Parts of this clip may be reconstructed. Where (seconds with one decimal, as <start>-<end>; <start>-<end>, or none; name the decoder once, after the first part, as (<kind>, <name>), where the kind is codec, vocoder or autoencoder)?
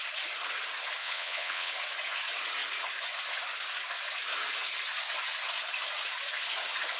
1.0-1.7 (vocoder, WaveNeXt)